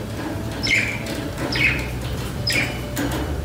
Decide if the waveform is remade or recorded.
remade